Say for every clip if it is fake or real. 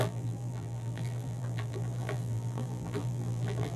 fake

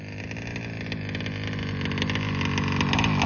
real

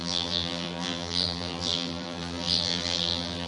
fake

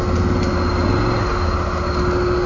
real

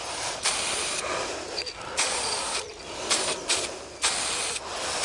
real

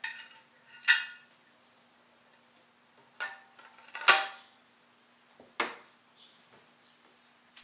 real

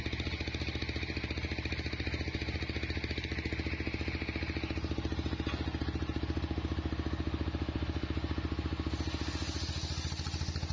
real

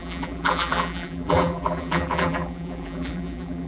fake